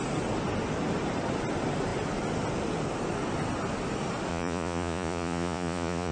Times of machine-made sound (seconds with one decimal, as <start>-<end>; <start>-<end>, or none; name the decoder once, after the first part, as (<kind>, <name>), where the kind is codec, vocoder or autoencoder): 4.3-6.1 (vocoder, Vocos)